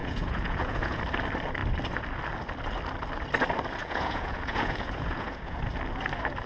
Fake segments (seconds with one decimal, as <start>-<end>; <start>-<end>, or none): 0.0-1.0; 3.8-5.6